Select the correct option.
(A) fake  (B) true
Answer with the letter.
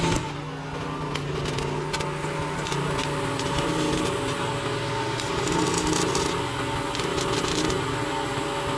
B